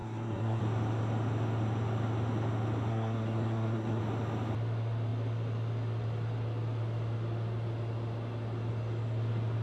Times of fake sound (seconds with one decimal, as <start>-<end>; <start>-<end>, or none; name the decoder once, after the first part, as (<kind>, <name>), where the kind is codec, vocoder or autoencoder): 0.0-0.6 (codec, SNAC); 2.9-4.0